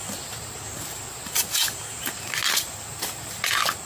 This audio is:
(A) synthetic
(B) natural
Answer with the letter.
B